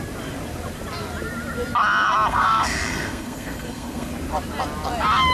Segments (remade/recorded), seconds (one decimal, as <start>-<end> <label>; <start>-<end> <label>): 0.0-2.3 recorded; 2.3-4.1 remade; 4.1-5.3 recorded